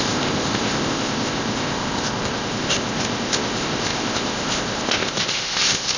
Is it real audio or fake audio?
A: fake